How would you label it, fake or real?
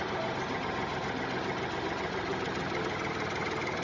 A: fake